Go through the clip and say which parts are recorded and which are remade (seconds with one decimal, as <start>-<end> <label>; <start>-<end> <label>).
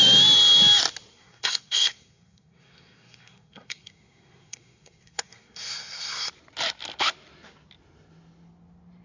0.0-1.1 recorded; 1.1-6.3 remade; 6.3-9.0 recorded